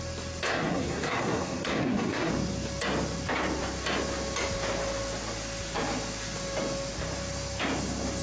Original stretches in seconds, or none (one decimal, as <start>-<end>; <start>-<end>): 0.0-0.5; 2.3-8.2